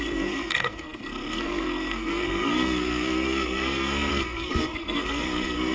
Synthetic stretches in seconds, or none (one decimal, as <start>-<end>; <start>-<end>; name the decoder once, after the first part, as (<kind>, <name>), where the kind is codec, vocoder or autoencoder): 0.0-5.7 (codec, SNAC)